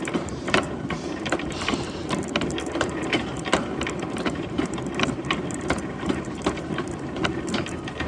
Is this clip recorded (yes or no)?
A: no